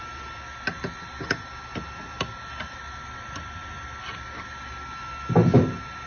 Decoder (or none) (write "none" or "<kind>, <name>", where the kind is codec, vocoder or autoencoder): none